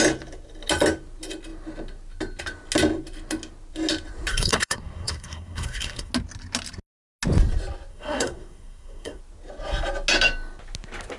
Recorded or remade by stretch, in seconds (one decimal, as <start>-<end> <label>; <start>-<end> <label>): 0.0-4.3 recorded; 4.3-6.1 remade; 6.1-7.9 recorded; 7.9-9.2 remade; 9.2-11.2 recorded